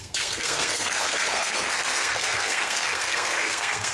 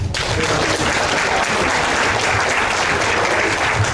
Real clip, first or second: second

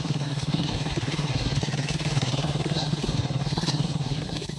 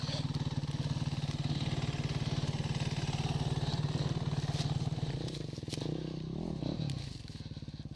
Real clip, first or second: second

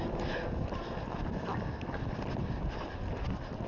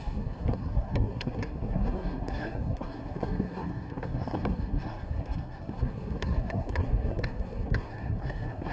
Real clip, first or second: first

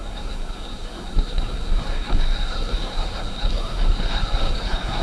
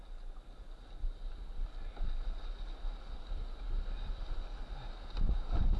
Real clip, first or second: second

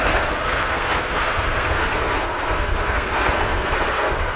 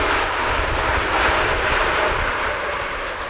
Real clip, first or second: second